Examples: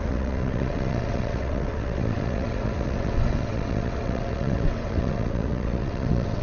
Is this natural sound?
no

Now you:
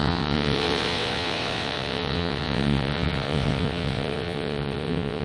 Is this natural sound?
no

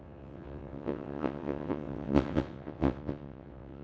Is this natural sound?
no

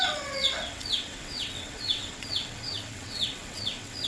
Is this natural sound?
no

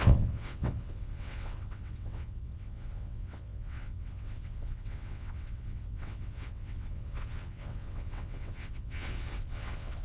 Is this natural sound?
no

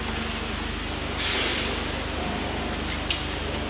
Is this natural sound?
yes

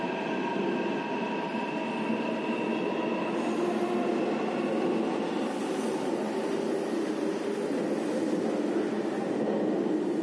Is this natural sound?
yes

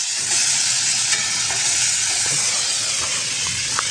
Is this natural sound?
no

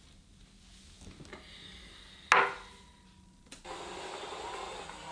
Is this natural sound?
yes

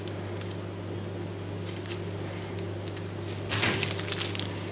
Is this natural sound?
yes